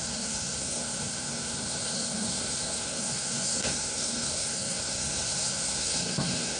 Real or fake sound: fake